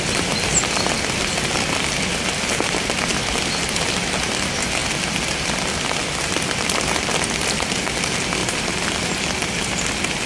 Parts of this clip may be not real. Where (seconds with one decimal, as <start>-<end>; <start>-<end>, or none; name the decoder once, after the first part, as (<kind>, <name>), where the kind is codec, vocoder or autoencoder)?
none